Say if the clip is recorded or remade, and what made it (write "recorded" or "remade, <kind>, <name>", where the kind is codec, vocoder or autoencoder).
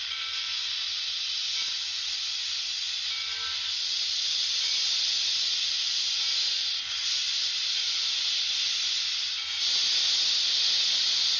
recorded